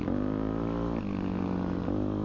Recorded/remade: recorded